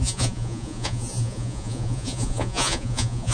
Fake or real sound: fake